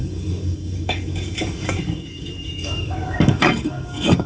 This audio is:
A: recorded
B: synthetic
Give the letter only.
B